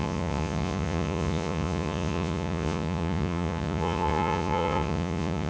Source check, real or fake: fake